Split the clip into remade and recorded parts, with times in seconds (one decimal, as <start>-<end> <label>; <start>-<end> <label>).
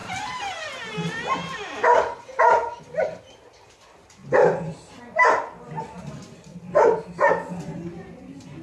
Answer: 0.0-3.2 remade; 3.2-4.2 recorded; 4.2-4.9 remade; 4.9-6.5 recorded; 6.5-7.0 remade; 7.0-8.6 recorded